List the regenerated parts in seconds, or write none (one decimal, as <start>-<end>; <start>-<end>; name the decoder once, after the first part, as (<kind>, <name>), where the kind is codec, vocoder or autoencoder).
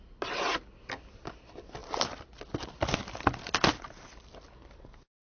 none